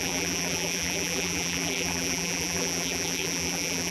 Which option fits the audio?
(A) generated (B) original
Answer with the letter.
A